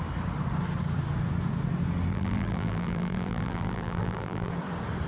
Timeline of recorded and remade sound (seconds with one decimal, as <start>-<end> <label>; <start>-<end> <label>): 0.0-2.1 recorded; 2.1-4.5 remade; 4.5-5.1 recorded